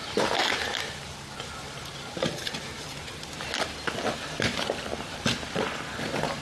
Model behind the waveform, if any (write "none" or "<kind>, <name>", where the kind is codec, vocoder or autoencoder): none